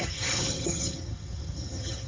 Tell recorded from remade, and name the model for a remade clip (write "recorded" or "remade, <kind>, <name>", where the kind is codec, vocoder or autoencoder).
remade, vocoder, HiFi-GAN